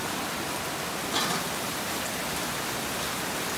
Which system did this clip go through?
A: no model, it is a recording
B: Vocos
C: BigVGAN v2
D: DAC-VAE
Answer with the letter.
A